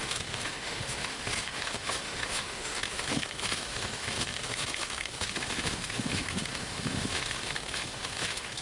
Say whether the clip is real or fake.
fake